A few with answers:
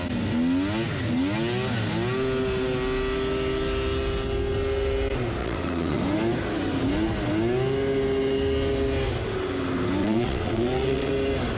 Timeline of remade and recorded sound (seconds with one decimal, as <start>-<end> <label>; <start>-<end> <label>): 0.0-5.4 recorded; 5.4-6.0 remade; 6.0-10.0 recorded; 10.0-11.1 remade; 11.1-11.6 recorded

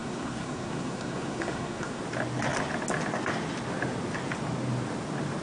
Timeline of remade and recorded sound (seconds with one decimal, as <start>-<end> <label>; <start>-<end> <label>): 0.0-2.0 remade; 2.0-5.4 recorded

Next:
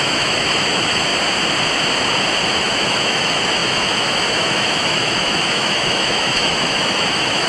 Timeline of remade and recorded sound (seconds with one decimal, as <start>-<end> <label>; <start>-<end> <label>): 0.0-1.1 remade; 1.1-2.5 recorded; 2.5-7.5 remade

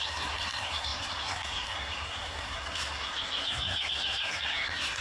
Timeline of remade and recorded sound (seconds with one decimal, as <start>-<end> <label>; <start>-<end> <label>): 0.0-5.0 remade